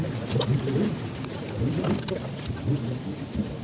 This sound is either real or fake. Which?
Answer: real